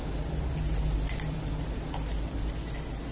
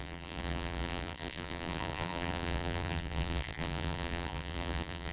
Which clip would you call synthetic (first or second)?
second